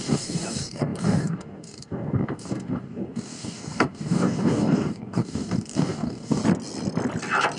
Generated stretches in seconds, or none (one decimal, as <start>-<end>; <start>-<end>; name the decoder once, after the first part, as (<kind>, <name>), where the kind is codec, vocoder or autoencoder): 0.0-6.4 (codec, DAC)

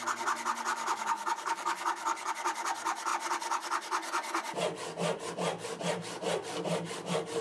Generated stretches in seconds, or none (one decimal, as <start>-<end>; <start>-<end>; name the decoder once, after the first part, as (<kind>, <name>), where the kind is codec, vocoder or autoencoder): 0.7-2.3 (codec, DAC)

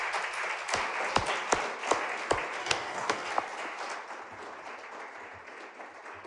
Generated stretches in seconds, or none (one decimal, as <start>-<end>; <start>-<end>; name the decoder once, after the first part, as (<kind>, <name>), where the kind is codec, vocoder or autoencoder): 2.6-3.3 (codec, DAC)